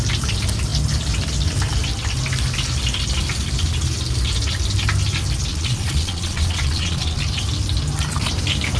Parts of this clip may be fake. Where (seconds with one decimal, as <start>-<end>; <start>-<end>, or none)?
5.5-7.2